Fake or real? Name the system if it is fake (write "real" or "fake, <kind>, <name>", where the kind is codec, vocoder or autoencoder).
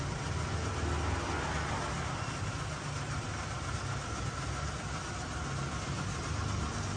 real